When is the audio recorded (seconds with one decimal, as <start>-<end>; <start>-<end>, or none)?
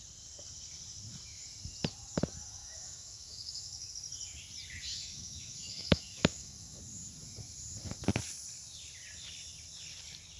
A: 0.0-2.6; 3.9-4.9; 6.8-10.4